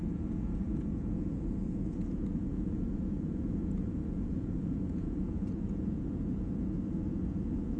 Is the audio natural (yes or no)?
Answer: no